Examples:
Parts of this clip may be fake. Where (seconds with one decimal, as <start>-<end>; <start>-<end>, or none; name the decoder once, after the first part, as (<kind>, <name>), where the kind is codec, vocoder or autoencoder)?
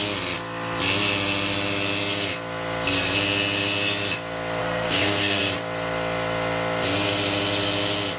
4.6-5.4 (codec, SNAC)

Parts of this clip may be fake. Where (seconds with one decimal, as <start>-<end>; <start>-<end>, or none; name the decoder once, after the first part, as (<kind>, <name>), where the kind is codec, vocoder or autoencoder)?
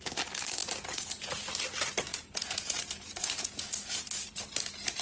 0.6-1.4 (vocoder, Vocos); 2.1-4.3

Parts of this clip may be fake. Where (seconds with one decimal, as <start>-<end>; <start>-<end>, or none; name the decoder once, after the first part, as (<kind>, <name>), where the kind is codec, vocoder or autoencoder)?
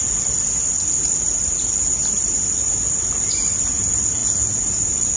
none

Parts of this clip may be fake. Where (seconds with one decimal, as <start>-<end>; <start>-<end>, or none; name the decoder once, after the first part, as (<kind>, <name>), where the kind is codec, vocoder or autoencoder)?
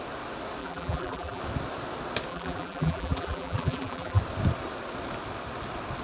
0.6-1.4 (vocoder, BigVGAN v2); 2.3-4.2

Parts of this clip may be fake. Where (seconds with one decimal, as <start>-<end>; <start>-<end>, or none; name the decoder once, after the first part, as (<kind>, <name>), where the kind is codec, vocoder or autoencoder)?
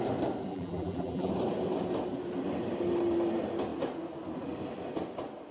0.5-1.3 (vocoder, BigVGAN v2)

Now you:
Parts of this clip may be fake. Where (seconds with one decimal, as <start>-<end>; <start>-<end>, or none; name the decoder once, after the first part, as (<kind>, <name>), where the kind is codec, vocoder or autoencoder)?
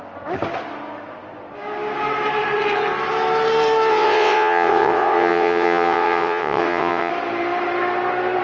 3.9-7.1 (vocoder, WaveNeXt)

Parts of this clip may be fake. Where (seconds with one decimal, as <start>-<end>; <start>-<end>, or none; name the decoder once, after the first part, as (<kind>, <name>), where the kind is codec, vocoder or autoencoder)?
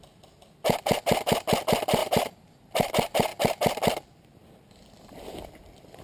2.0-2.9 (vocoder, BigVGAN v2)